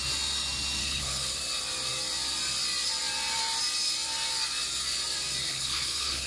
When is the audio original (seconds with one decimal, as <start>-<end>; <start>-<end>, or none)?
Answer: 0.0-0.8; 1.4-5.4